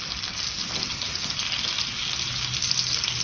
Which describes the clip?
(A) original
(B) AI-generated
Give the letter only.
A